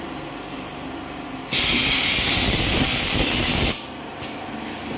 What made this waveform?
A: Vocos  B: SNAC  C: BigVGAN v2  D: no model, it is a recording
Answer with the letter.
D